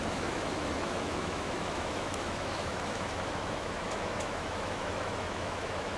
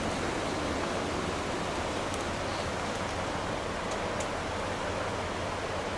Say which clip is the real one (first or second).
second